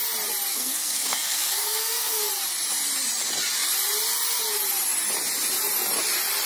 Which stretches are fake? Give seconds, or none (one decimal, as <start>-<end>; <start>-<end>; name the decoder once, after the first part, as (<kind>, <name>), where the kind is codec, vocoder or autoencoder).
0.5-2.3 (codec, SNAC)